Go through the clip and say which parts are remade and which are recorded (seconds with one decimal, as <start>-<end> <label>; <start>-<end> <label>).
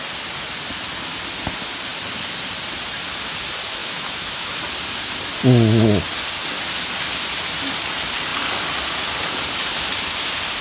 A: 0.0-3.8 recorded; 3.8-4.6 remade; 4.6-10.6 recorded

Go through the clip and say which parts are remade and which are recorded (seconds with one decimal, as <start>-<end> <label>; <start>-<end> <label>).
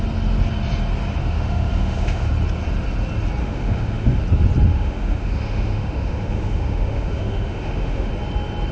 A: 0.0-1.2 recorded; 1.2-2.3 remade; 2.3-3.4 recorded; 3.4-4.2 remade; 4.2-4.7 recorded; 4.7-8.1 remade; 8.1-8.7 recorded